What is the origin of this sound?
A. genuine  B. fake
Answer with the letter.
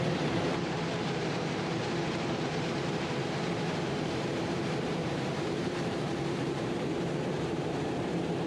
B